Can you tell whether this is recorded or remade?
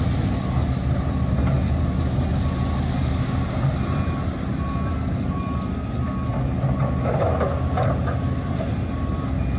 recorded